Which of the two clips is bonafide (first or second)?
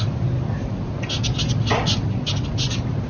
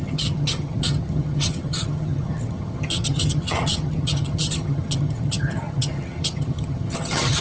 first